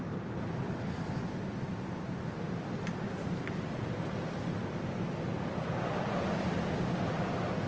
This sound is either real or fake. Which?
real